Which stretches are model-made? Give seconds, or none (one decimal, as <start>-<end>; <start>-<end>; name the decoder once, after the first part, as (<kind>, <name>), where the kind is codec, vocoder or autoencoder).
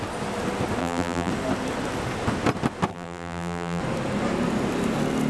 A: 0.8-1.3 (vocoder, BigVGAN v2); 2.9-3.8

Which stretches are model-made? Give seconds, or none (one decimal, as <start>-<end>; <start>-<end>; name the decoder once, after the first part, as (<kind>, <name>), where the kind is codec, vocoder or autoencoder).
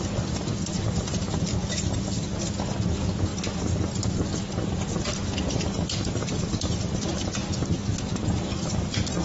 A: 0.0-0.5 (vocoder, BigVGAN v2); 1.1-3.3; 5.1-7.4; 8.2-9.2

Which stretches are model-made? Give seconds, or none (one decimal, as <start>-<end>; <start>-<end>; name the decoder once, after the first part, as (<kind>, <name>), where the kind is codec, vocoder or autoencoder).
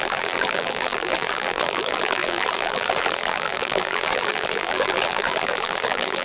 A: 0.0-6.2 (vocoder, BigVGAN v2)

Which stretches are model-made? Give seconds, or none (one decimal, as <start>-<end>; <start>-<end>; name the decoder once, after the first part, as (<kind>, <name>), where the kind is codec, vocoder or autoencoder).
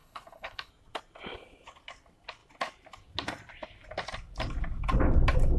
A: 0.0-0.7 (codec, HILCodec)